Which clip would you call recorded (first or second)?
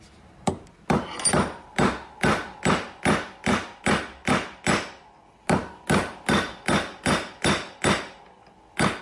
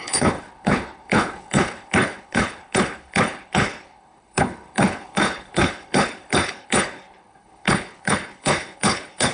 first